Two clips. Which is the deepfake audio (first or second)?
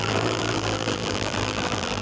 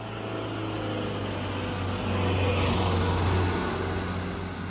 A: first